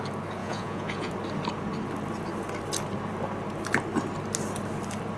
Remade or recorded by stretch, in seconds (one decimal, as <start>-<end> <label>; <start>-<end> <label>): 0.0-0.4 recorded; 0.4-1.1 remade; 1.1-5.2 recorded